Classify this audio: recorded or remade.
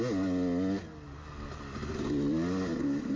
recorded